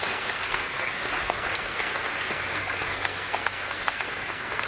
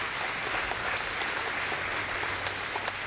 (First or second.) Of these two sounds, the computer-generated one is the first